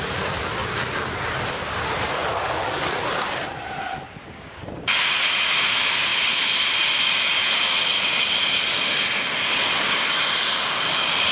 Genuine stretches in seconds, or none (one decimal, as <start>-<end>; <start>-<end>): 0.6-1.3; 6.1-9.8